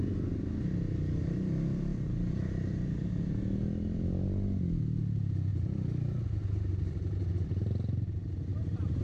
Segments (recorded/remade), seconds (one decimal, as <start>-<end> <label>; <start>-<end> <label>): 0.0-8.5 recorded; 8.5-9.0 remade